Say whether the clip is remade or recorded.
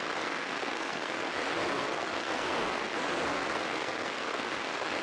remade